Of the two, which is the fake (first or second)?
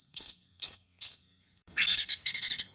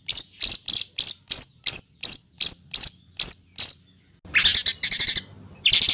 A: first